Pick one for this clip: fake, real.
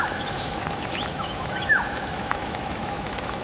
fake